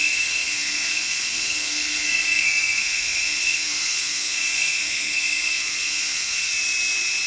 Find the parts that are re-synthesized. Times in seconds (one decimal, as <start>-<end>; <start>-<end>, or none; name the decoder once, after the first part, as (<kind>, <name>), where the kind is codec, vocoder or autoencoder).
0.0-6.5 (codec, SNAC)

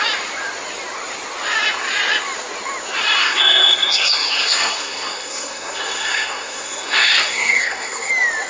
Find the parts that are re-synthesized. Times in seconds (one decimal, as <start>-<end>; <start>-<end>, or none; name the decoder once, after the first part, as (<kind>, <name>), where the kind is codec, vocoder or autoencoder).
3.2-8.1 (codec, SNAC)

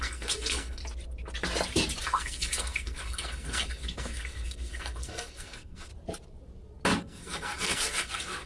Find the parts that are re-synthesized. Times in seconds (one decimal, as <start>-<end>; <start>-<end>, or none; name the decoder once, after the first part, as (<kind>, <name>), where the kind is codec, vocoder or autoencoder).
0.0-0.8 (codec, SNAC); 2.0-5.9; 7.0-8.5

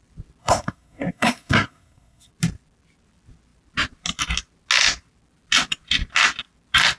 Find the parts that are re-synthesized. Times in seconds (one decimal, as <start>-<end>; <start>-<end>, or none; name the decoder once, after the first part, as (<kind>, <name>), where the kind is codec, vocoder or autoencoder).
0.4-2.3 (codec, SNAC)

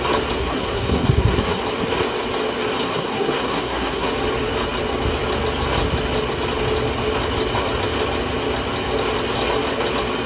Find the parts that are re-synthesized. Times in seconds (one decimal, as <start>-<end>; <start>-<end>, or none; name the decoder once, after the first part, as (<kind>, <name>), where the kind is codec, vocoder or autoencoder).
0.4-1.6 (codec, SNAC); 2.8-4.1

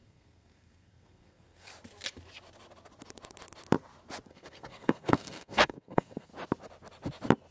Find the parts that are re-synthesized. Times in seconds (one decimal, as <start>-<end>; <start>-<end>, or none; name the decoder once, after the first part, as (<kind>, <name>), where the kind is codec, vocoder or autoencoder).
0.0-1.7 (codec, SNAC); 4.3-6.3

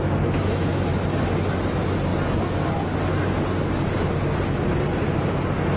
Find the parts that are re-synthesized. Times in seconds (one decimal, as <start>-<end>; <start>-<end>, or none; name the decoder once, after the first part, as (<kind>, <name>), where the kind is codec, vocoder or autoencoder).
none

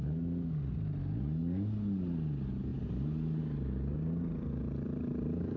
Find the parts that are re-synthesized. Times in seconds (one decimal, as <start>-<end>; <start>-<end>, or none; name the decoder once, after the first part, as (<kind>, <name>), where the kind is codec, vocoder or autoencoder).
none